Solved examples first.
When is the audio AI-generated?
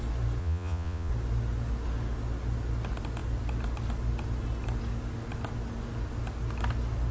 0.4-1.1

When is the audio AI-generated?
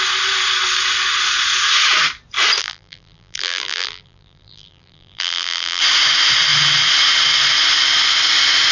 2.6-5.8